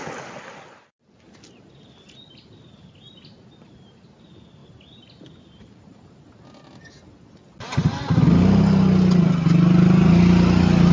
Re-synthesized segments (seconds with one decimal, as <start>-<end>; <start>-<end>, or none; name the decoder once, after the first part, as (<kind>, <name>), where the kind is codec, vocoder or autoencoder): none